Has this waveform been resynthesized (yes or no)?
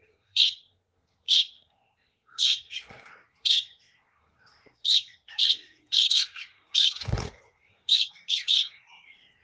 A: yes